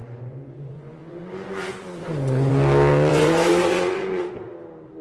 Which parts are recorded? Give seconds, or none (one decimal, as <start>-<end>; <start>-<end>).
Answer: 2.5-3.1; 4.3-5.0